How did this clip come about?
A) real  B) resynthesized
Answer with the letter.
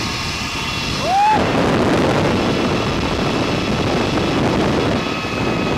A